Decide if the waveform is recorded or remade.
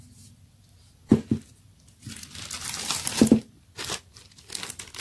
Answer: recorded